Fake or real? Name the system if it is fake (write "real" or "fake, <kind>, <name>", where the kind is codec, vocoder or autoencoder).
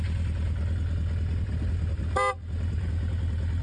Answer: real